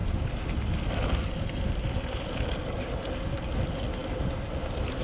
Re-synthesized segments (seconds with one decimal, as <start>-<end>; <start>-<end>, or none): none